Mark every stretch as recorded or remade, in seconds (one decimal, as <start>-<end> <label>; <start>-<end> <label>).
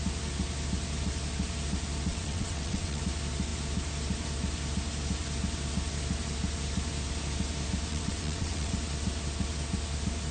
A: 0.0-2.1 recorded; 2.1-3.0 remade; 3.0-7.9 recorded; 7.9-8.7 remade; 8.7-10.3 recorded